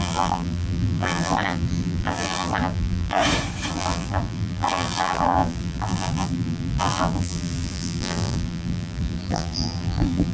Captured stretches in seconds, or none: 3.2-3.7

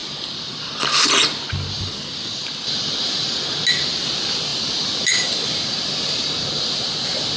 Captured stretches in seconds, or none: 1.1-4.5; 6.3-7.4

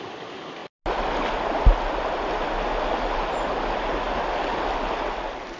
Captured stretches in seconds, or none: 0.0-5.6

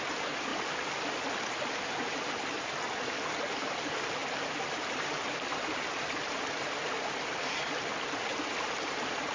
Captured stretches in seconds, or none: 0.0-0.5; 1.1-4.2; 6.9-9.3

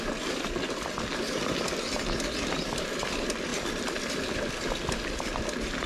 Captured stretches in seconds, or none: 0.0-5.9

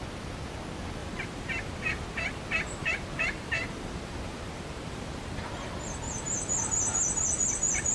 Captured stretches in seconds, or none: 0.0-1.0; 5.5-7.9

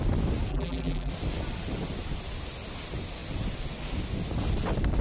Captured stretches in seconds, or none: 0.0-0.5; 1.1-5.0